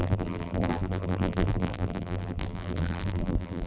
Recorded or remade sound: remade